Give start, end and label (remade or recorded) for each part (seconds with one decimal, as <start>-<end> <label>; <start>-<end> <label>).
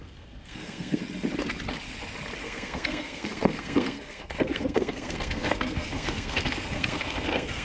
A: 0.0-1.0 remade; 1.0-2.4 recorded; 2.4-7.6 remade